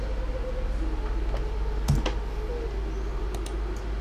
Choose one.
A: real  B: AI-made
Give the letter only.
A